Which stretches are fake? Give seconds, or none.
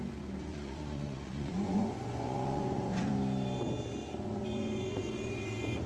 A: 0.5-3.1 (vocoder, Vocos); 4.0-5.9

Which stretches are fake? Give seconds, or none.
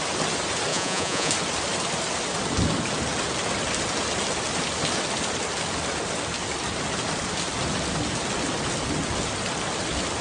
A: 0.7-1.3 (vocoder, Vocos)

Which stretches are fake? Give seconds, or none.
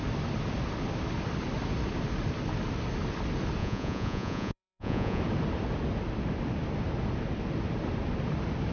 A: 3.6-5.2 (vocoder, Vocos)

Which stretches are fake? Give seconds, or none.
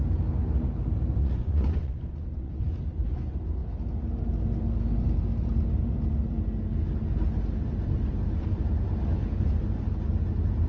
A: 1.2-2.5 (vocoder, Vocos)